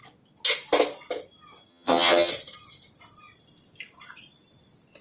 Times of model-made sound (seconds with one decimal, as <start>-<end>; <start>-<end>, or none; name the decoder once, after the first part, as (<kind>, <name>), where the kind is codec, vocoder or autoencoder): 1.7-2.3 (vocoder, HiFi-GAN)